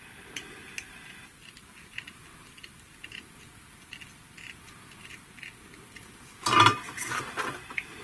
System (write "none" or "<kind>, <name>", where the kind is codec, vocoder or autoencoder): vocoder, BigVGAN v2